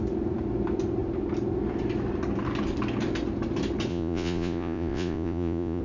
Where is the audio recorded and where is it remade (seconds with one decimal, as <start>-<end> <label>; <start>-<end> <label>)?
0.0-3.9 recorded; 3.9-5.8 remade